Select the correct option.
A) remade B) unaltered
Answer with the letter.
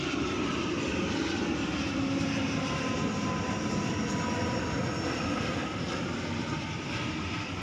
A